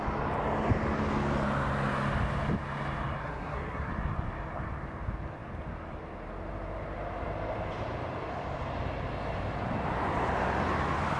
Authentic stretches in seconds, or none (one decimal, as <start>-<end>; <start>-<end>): 0.0-3.2; 3.9-11.2